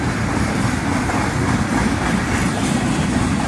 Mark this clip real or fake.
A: fake